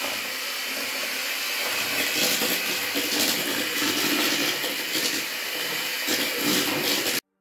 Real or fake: real